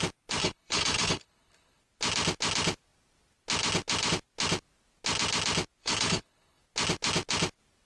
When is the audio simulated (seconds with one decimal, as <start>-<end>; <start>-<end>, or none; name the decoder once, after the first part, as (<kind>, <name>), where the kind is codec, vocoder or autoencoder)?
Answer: 0.4-1.8 (codec, HILCodec); 5.8-6.6

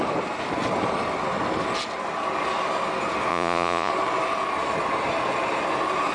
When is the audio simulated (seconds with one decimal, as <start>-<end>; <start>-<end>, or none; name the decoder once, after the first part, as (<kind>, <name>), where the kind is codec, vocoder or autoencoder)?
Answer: 3.3-3.9 (vocoder, Vocos)

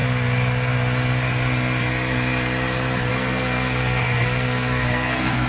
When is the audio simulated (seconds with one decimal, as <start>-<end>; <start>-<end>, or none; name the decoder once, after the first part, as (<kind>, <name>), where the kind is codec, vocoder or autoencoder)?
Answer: 3.1-5.5 (codec, SNAC)

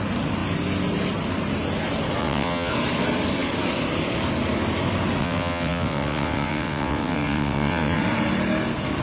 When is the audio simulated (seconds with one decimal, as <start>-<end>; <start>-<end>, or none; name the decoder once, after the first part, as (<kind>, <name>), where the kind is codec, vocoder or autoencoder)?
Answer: 2.2-2.7 (vocoder, WaveNeXt); 5.2-8.0